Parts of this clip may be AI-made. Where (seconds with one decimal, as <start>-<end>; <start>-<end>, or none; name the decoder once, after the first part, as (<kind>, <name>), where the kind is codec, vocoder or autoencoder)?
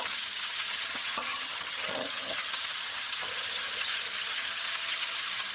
0.0-5.5 (vocoder, HiFi-GAN)